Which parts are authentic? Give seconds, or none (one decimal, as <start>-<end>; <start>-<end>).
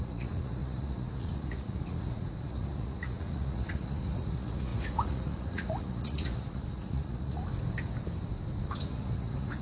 7.4-8.6